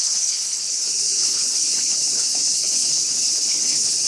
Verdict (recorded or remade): remade